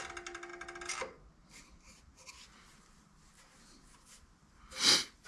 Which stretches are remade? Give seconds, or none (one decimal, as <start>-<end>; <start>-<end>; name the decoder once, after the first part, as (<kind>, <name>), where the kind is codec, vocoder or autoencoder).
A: none